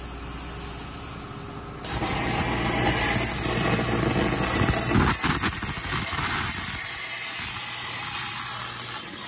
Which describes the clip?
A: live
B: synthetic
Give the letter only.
A